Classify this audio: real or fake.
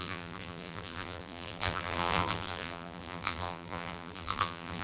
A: fake